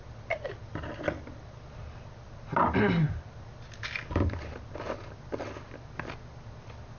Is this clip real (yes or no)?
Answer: yes